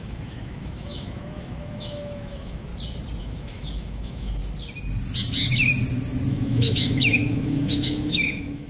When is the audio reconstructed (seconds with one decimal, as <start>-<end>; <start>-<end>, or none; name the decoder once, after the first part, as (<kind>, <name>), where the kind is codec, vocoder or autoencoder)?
0.0-2.7 (autoencoder, DAC-VAE); 3.2-4.4; 6.3-8.7